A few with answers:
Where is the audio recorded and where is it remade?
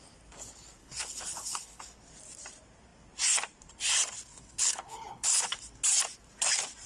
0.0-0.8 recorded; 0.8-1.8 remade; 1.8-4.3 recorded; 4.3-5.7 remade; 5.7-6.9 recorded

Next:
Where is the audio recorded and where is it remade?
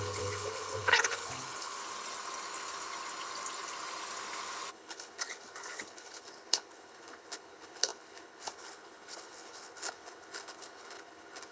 0.0-1.8 remade; 1.8-4.7 recorded; 4.7-11.5 remade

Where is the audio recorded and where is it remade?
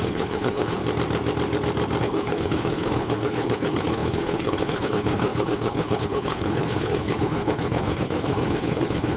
0.0-0.8 remade; 0.8-2.0 recorded; 2.0-9.2 remade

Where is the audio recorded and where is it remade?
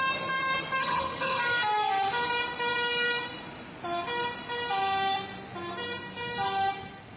0.0-0.8 recorded; 0.8-1.4 remade; 1.4-7.2 recorded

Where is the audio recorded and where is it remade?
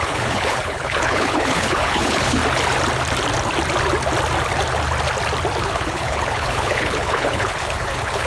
0.0-2.4 remade; 2.4-5.6 recorded; 5.6-8.3 remade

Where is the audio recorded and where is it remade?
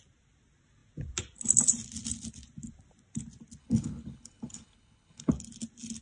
0.0-3.6 recorded; 3.6-5.3 remade; 5.3-6.0 recorded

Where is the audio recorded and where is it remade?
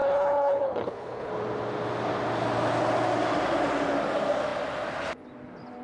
0.0-1.3 remade; 1.3-5.8 recorded